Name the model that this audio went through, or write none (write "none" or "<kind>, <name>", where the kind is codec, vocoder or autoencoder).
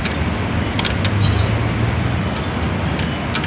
none